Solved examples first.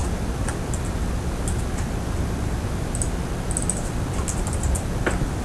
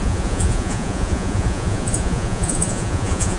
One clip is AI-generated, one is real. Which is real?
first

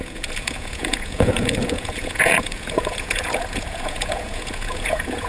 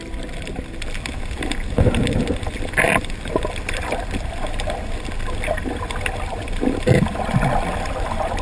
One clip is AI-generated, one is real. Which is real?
second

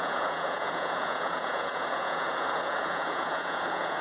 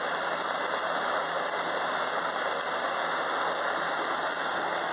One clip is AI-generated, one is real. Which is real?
second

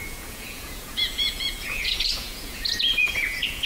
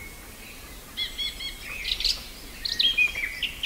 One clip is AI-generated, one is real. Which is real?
second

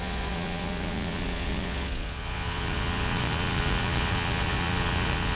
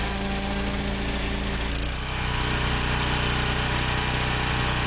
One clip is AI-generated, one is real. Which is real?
second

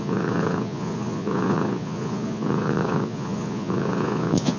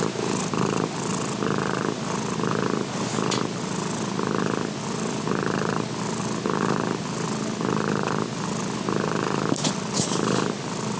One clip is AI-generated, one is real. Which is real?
second